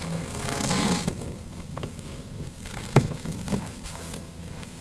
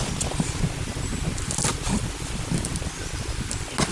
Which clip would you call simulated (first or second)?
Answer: first